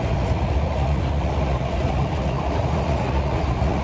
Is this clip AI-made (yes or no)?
yes